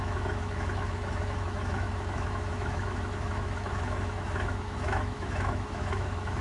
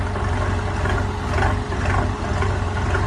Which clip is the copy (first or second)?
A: first